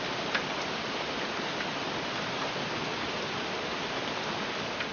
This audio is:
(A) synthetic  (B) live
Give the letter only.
B